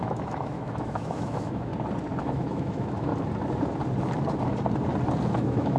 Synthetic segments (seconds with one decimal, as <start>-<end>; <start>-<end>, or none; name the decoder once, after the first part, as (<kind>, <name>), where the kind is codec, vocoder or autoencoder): 0.0-1.7 (autoencoder, DAC-VAE); 2.2-3.1; 5.3-5.8